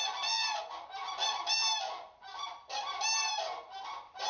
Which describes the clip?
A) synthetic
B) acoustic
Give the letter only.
B